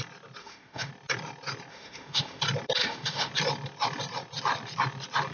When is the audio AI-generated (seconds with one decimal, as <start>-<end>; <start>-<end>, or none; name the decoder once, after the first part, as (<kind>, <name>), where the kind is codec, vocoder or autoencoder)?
0.4-0.9 (autoencoder, DAC-VAE); 1.7-2.4; 2.8-3.3